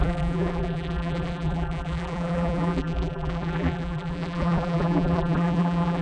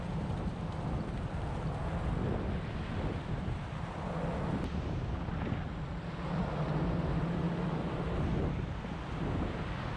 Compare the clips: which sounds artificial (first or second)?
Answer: first